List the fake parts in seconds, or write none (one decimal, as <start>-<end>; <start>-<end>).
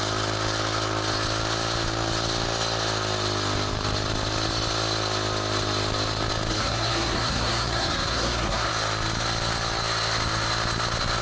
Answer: 6.5-8.7